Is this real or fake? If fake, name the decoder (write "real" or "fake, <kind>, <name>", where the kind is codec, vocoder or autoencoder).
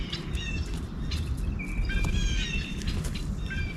real